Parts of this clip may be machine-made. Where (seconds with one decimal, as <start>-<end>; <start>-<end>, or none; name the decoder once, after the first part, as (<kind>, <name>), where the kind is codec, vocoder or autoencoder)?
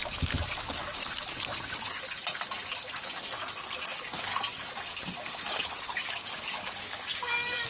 0.5-1.0 (codec, DAC); 3.3-4.3; 5.5-7.7